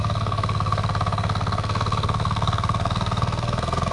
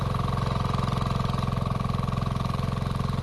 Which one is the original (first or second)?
second